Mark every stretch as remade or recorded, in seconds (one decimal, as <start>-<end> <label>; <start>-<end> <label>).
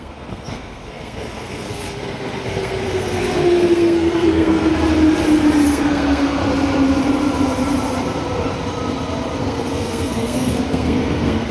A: 0.0-4.7 remade; 4.7-5.7 recorded; 5.7-6.4 remade; 6.4-9.4 recorded; 9.4-11.5 remade